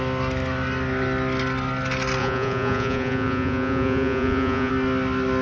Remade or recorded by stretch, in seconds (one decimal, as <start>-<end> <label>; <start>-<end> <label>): 0.0-2.2 recorded; 2.2-4.7 remade; 4.7-5.4 recorded